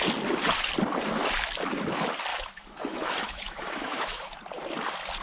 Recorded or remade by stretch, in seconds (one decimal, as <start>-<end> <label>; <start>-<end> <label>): 0.0-2.3 recorded; 2.3-4.4 remade; 4.4-5.2 recorded